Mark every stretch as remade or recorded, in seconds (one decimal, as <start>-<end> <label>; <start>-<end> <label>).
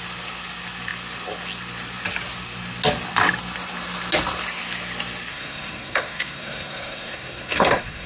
0.0-5.3 recorded; 5.3-8.1 remade